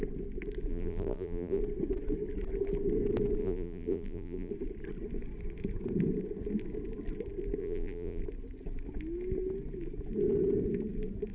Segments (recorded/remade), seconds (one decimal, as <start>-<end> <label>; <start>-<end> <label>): 0.0-0.7 recorded; 0.7-1.6 remade; 1.6-3.4 recorded; 3.4-4.5 remade; 4.5-7.6 recorded; 7.6-8.2 remade; 8.2-11.3 recorded